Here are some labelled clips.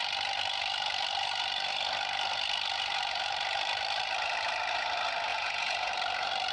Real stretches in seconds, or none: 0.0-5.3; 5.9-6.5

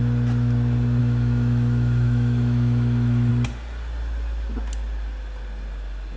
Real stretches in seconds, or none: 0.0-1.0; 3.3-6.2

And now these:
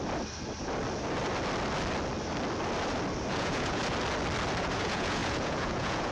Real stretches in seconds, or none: 0.0-3.3; 3.8-4.6

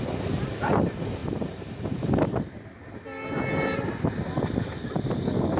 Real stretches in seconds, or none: 0.0-5.6